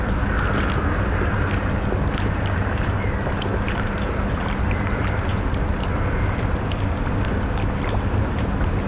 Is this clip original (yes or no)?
yes